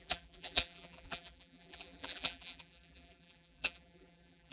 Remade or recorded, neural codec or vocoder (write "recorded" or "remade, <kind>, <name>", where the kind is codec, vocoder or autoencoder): remade, vocoder, BigVGAN v2